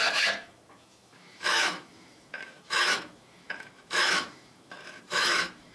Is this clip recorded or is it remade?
remade